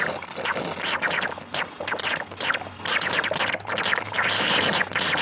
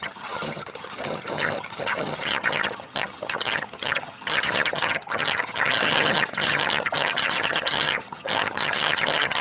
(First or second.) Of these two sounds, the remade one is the second